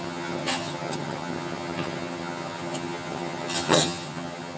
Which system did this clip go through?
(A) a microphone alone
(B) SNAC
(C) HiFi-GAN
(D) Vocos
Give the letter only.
C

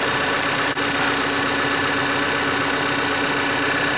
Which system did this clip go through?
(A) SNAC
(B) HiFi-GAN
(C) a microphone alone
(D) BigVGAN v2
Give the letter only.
C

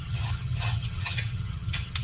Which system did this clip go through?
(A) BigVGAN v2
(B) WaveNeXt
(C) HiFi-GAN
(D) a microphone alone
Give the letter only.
C